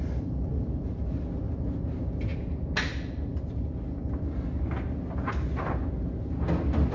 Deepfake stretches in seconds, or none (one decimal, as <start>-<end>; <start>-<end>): none